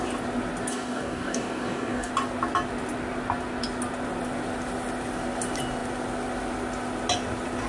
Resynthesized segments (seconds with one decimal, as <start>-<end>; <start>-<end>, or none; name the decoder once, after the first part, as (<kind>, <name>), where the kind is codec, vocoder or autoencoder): 0.7-2.1 (codec, DAC)